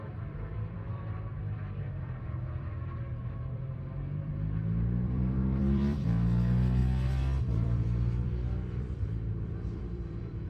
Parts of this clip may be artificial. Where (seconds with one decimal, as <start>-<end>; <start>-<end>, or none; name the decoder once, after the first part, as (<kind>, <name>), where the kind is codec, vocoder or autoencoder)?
0.0-6.8 (vocoder, BigVGAN v2); 7.5-10.5